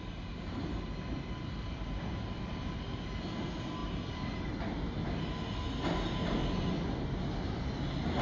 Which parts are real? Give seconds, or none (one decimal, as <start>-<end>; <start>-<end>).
0.0-8.2